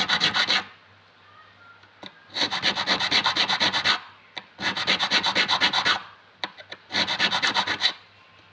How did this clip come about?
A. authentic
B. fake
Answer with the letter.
A